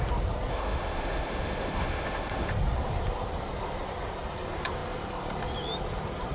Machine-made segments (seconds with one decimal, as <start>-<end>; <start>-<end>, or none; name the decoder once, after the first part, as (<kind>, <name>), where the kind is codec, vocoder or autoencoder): 0.5-2.5 (autoencoder, DAC-VAE)